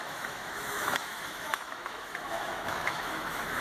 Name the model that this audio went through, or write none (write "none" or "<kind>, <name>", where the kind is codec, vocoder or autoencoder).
autoencoder, DAC-VAE